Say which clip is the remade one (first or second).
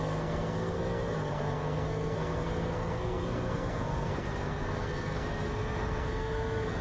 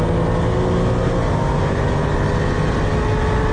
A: first